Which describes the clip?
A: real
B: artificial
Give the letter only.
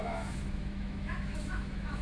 B